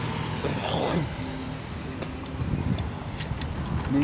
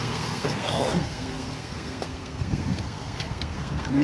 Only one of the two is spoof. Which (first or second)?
second